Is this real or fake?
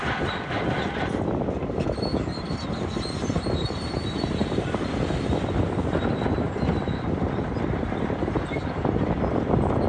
fake